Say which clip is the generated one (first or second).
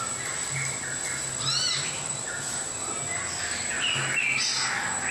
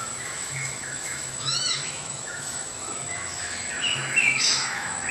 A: second